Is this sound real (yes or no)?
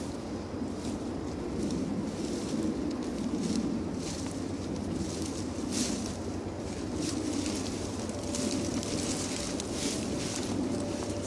no